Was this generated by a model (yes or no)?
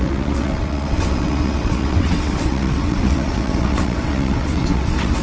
yes